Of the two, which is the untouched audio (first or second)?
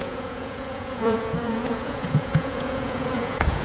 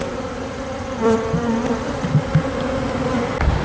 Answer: second